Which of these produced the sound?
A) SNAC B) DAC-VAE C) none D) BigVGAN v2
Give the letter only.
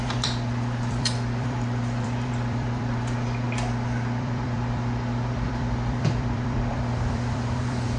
D